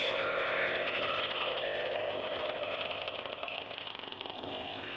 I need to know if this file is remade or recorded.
remade